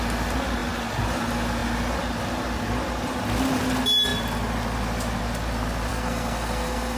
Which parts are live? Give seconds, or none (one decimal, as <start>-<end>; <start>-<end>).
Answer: 0.0-5.9